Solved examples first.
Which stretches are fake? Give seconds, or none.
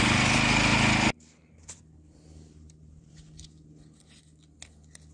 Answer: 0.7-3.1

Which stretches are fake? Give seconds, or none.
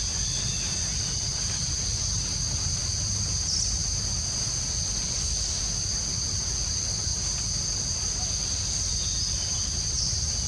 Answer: none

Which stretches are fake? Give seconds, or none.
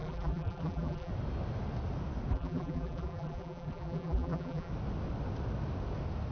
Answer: 0.0-1.1; 2.3-4.7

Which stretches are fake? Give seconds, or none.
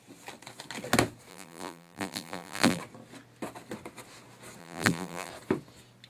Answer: 1.3-2.8; 4.6-5.3